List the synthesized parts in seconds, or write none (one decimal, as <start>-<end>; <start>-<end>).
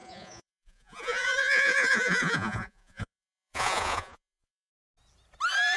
0.0-4.7